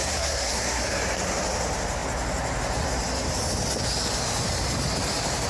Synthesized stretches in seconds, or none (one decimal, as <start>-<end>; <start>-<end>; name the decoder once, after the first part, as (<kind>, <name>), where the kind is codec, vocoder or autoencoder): 0.0-0.8 (codec, SNAC)